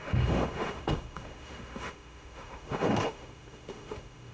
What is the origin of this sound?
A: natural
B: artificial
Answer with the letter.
B